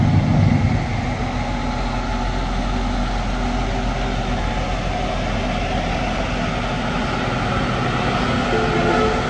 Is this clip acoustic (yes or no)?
yes